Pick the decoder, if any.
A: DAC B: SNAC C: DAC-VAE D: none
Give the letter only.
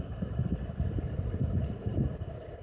D